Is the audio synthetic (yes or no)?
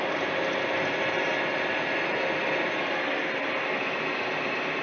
no